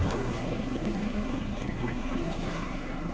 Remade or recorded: remade